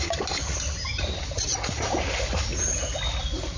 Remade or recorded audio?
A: recorded